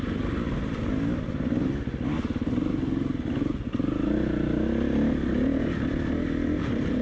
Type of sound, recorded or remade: recorded